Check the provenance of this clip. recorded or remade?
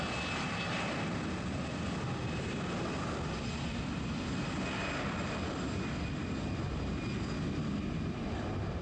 recorded